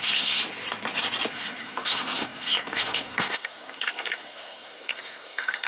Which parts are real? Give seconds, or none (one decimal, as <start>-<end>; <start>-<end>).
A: 0.4-1.3